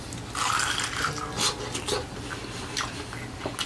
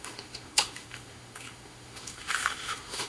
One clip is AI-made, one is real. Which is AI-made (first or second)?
second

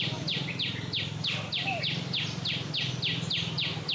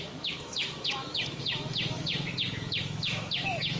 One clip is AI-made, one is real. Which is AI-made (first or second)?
second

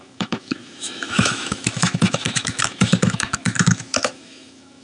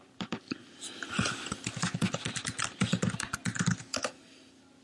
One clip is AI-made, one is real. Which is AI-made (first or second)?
first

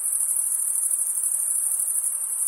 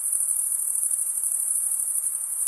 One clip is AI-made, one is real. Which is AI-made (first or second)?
second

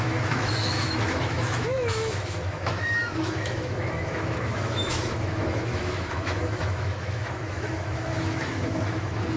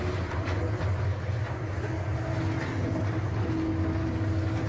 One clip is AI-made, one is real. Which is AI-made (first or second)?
first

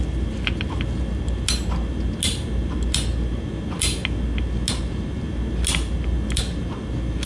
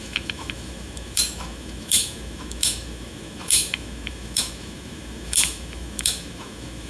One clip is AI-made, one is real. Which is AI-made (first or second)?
second